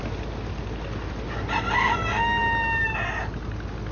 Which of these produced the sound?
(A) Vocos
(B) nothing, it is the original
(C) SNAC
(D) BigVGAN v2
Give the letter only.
B